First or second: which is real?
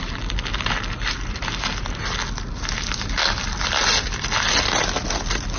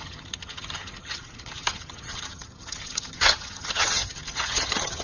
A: first